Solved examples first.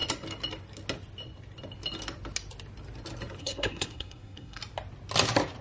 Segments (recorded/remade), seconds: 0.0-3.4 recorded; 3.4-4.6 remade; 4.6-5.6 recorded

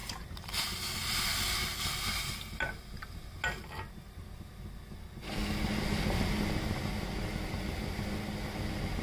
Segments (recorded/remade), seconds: 0.0-0.6 remade; 0.6-9.0 recorded

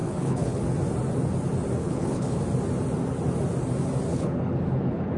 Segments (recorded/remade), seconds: 0.0-0.6 remade; 0.6-1.8 recorded; 1.8-2.4 remade; 2.4-4.1 recorded; 4.1-5.2 remade

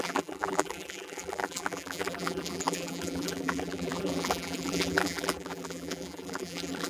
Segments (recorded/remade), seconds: 0.0-6.9 remade

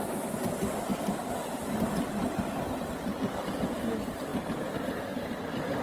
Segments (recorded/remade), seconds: 0.0-5.8 recorded

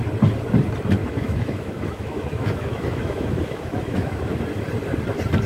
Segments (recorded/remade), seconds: 0.0-1.0 recorded; 1.0-4.3 remade; 4.3-5.5 recorded